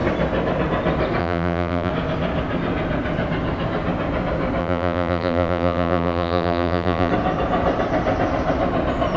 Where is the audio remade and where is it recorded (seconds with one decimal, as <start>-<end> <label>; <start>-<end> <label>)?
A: 0.0-1.2 recorded; 1.2-1.9 remade; 1.9-4.6 recorded; 4.6-7.1 remade; 7.1-9.2 recorded